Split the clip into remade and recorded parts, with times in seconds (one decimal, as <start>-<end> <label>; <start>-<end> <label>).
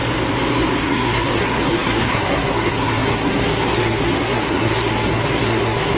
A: 0.0-0.8 recorded; 0.8-6.0 remade